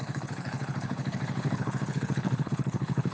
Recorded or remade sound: remade